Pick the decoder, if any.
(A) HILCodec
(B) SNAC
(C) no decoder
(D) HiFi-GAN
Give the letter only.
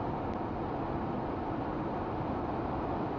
C